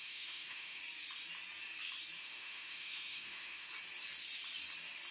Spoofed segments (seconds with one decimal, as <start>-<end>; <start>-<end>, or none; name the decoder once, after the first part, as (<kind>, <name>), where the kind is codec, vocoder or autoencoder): 0.0-0.8 (autoencoder, DAC-VAE); 2.2-3.7